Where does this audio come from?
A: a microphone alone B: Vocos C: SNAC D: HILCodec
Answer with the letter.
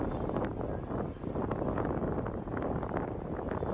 A